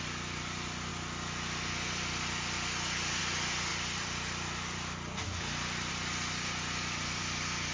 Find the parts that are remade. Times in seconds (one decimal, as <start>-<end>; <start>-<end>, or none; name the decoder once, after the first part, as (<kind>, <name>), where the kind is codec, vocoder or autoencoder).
0.0-0.9 (vocoder, BigVGAN v2); 3.2-7.7